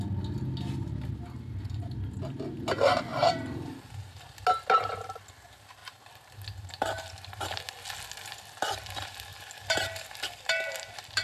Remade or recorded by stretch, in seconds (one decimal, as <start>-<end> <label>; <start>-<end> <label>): 0.0-3.1 recorded; 3.1-3.9 remade; 3.9-9.3 recorded; 9.3-11.2 remade